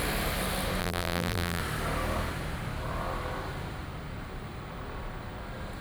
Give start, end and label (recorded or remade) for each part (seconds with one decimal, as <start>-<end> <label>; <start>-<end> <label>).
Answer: 0.0-0.8 recorded; 0.8-1.6 remade; 1.6-5.8 recorded

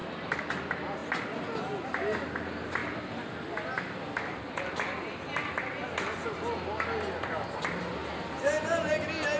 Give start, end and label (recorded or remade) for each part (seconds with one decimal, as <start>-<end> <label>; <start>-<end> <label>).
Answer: 0.0-0.5 remade; 0.5-2.8 recorded; 2.8-3.4 remade; 3.4-8.0 recorded; 8.0-8.9 remade; 8.9-9.4 recorded

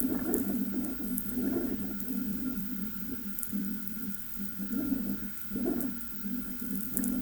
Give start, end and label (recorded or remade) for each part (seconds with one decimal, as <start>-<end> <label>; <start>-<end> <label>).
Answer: 0.0-2.3 recorded; 2.3-4.6 remade; 4.6-7.2 recorded

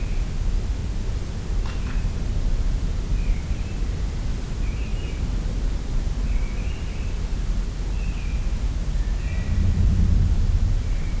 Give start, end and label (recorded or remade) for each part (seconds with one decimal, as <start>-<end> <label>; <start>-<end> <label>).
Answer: 0.0-0.8 recorded; 0.8-1.8 remade; 1.8-4.9 recorded; 4.9-6.1 remade; 6.1-11.2 recorded

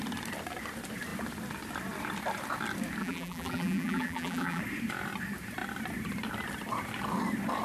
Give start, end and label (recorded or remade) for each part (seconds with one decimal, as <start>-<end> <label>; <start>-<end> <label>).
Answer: 0.0-3.0 recorded; 3.0-4.6 remade; 4.6-7.6 recorded

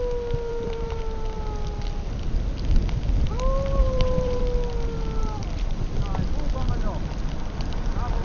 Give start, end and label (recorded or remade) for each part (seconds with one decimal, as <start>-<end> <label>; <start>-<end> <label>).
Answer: 0.0-0.5 recorded; 0.5-1.0 remade; 1.0-3.8 recorded; 3.8-4.4 remade; 4.4-5.2 recorded; 5.2-5.8 remade; 5.8-8.2 recorded

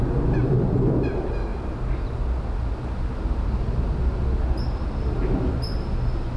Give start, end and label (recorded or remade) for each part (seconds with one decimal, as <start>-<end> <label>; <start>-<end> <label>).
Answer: 0.0-6.4 recorded